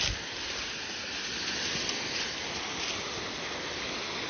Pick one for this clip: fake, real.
real